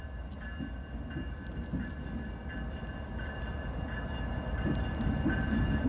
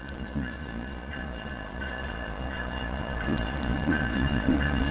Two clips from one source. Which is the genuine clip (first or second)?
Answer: first